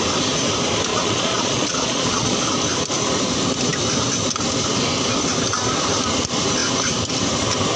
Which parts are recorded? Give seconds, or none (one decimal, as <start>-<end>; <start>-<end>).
0.0-0.9; 2.5-7.8